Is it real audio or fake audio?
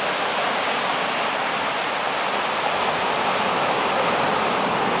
real